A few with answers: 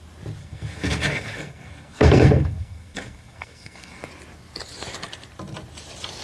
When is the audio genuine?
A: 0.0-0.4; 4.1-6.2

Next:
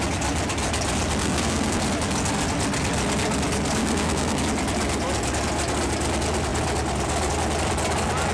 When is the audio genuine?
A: 0.0-1.2; 1.8-3.8; 4.4-8.3

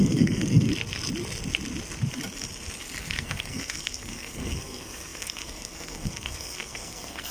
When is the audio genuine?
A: 0.7-3.0

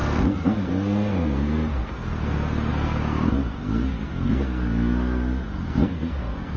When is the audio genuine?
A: none

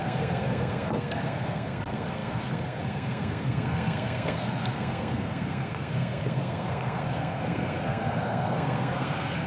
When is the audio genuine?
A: none